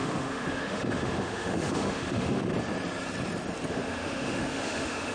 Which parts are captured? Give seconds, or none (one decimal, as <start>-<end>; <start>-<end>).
2.5-3.7